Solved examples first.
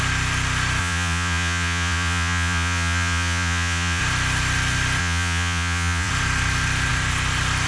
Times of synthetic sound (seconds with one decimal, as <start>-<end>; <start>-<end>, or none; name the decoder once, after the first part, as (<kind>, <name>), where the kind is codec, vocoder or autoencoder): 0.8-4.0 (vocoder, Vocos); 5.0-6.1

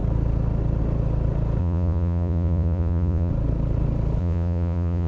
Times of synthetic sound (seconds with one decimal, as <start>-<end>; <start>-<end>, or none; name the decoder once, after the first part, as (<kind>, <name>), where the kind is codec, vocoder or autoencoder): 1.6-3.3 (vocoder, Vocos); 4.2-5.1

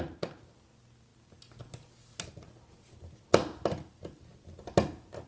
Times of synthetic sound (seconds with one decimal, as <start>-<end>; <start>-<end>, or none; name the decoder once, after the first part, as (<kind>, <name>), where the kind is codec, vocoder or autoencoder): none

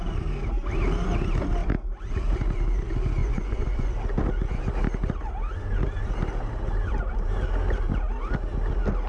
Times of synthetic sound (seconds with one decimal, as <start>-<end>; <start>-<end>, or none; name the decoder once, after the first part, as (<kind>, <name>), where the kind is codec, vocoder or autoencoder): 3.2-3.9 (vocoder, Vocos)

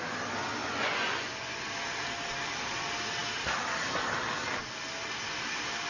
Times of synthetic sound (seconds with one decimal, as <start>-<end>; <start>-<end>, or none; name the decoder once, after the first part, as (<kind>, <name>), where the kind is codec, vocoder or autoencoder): 0.6-1.6 (vocoder, Vocos)

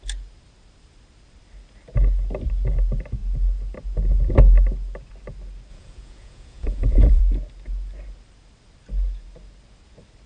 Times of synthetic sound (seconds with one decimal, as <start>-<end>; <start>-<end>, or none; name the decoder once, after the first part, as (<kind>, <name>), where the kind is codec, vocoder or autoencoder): 5.7-7.2 (vocoder, Vocos)

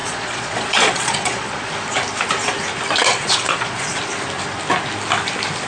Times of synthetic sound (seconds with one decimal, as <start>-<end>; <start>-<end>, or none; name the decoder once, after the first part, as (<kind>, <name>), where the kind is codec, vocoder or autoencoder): 0.0-1.7 (vocoder, Vocos); 3.1-4.0